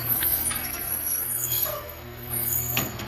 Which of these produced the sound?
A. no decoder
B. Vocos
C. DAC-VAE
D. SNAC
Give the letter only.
D